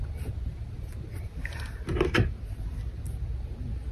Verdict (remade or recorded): remade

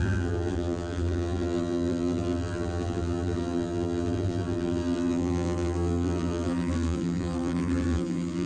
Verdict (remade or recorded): remade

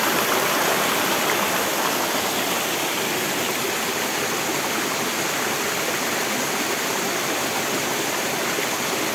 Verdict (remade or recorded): recorded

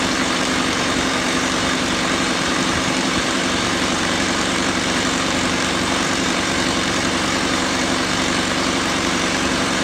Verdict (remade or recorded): remade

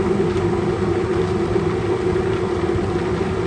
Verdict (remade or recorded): recorded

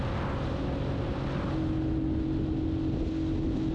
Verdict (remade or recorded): recorded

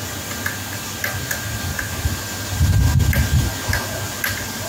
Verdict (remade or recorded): recorded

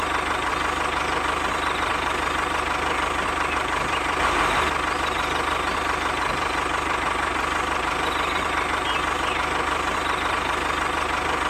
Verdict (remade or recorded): recorded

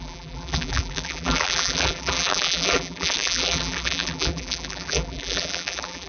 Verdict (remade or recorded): remade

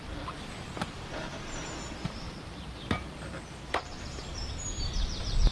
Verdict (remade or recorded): remade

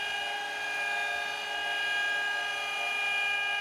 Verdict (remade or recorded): recorded